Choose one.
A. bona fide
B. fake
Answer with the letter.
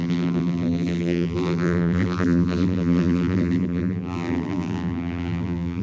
B